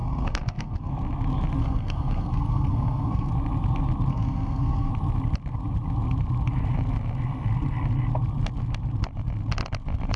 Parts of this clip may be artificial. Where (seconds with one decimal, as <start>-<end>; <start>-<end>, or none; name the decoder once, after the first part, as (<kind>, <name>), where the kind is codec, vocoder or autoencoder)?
0.0-0.9 (codec, SNAC); 1.6-3.3; 4.1-4.9